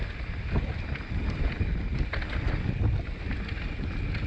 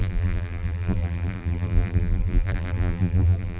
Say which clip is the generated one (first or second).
second